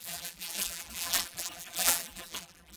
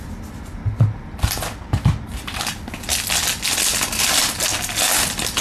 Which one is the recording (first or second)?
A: second